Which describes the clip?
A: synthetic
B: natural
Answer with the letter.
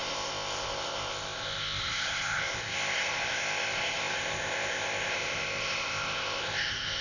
A